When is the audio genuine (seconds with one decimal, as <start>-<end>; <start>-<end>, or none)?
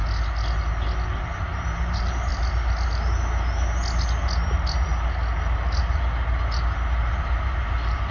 0.0-1.2; 2.3-7.2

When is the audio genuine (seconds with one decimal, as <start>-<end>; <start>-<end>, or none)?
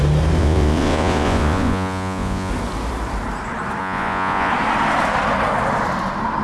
0.0-0.4; 2.5-3.8; 4.5-6.4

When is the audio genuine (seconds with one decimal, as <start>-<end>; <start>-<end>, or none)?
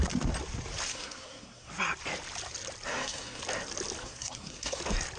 0.0-0.9; 1.7-2.9; 3.4-4.0; 4.8-5.2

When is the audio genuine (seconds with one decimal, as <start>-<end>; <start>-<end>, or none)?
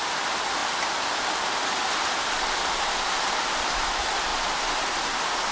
0.0-5.5